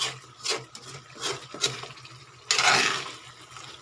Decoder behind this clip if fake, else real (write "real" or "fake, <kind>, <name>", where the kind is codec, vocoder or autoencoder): real